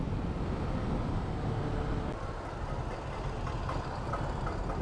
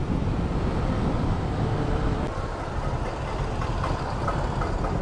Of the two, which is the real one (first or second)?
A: first